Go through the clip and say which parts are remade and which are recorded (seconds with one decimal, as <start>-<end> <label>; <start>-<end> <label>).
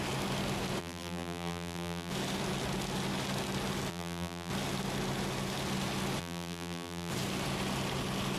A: 0.0-0.8 recorded; 0.8-2.1 remade; 2.1-3.9 recorded; 3.9-4.5 remade; 4.5-6.2 recorded; 6.2-7.1 remade; 7.1-8.4 recorded